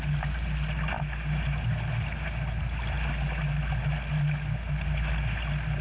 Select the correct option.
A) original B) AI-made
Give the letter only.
A